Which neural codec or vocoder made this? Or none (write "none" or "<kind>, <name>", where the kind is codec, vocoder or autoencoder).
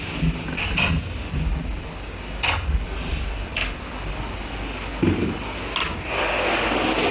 none